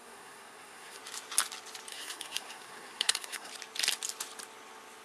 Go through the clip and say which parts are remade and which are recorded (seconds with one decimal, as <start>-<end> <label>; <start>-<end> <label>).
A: 0.0-1.0 remade; 1.0-1.9 recorded; 1.9-3.5 remade; 3.5-5.0 recorded